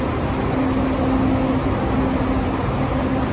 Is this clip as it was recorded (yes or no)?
yes